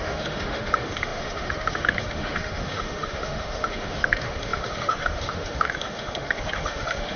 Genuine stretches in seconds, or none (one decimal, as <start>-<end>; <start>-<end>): none